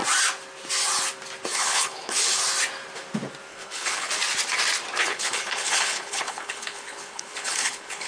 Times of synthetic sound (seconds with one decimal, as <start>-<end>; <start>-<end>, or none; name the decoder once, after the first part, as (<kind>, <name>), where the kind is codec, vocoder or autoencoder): 1.5-2.4 (codec, HILCodec); 3.5-4.1; 5.0-8.1